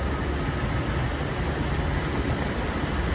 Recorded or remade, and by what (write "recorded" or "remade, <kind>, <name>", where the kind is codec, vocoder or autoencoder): recorded